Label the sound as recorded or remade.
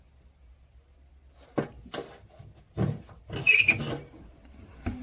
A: recorded